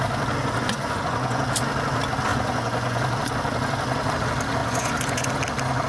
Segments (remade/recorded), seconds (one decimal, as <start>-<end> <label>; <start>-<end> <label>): 0.0-0.4 recorded; 0.4-1.4 remade; 1.4-2.3 recorded; 2.3-3.0 remade; 3.0-4.6 recorded; 4.6-5.3 remade; 5.3-5.9 recorded